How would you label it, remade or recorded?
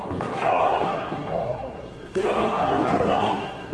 remade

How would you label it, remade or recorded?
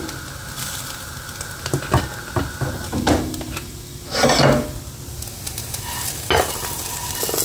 recorded